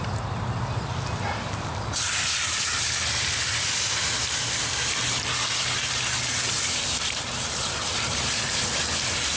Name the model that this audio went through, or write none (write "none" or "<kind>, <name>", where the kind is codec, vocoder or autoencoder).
none